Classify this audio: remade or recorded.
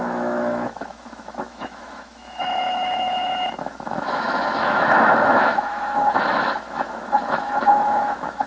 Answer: remade